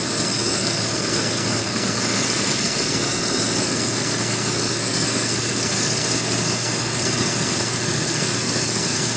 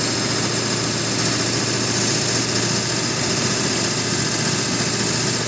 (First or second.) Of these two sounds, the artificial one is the first